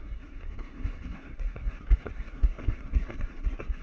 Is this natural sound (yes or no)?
no